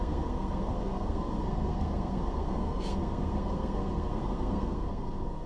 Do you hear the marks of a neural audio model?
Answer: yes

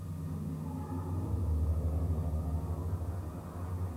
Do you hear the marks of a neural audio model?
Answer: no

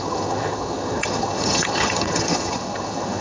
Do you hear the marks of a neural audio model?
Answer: yes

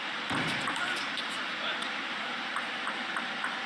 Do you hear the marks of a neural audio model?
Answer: yes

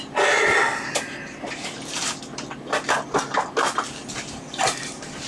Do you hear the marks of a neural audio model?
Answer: no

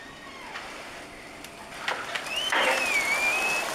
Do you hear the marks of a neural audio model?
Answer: no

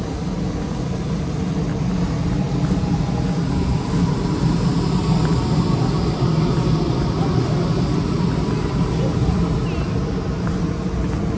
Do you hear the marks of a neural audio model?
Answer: no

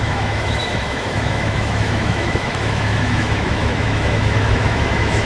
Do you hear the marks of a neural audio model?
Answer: yes